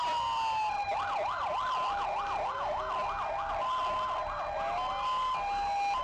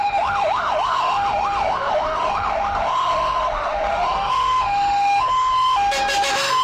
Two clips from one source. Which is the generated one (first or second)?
second